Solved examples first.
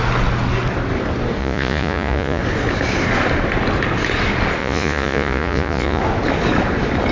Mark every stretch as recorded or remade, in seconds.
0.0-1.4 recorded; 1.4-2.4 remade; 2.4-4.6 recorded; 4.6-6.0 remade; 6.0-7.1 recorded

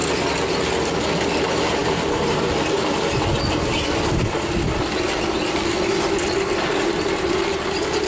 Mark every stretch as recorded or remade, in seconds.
0.0-8.1 recorded

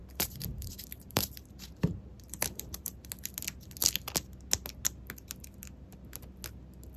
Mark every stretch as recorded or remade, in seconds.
0.0-3.1 remade; 3.1-7.0 recorded

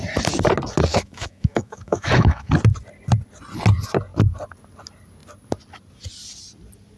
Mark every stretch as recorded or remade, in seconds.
0.0-0.9 recorded; 0.9-2.5 remade; 2.5-7.0 recorded